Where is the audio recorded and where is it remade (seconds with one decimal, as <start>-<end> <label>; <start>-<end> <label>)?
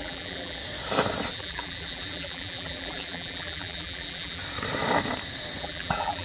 0.0-0.6 remade; 0.6-1.3 recorded; 1.3-4.4 remade; 4.4-5.6 recorded; 5.6-6.2 remade